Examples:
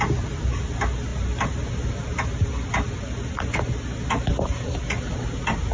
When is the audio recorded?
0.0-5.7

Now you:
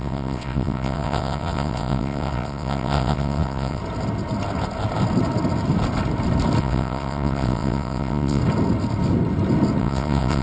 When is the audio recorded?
3.8-6.6; 8.4-9.8

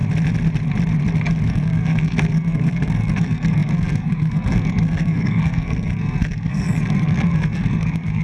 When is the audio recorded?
0.0-1.5